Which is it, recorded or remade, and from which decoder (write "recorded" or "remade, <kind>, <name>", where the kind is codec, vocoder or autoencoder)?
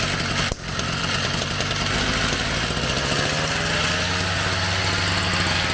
recorded